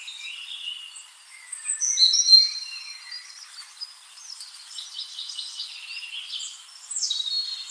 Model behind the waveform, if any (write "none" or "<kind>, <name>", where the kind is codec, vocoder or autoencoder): none